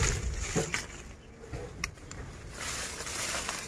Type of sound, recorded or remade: recorded